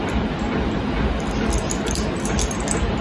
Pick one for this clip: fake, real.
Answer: real